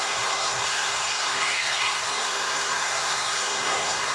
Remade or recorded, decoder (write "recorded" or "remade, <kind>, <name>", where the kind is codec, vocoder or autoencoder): remade, codec, SNAC